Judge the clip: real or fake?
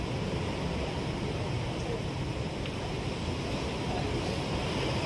fake